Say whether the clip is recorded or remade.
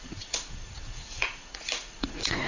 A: remade